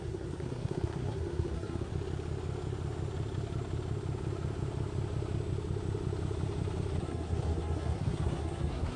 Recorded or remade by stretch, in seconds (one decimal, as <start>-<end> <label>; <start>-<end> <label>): 0.0-1.9 remade; 1.9-7.0 recorded; 7.0-9.0 remade